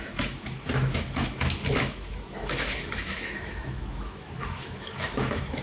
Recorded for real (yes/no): no